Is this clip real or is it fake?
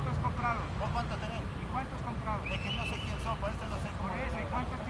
real